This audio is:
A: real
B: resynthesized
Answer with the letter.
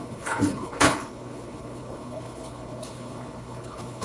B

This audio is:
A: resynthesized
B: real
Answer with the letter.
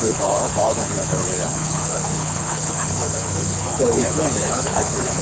A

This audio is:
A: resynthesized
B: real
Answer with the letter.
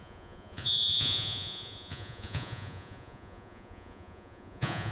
A